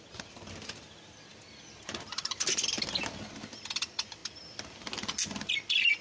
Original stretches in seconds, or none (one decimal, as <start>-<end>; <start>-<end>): 4.2-5.5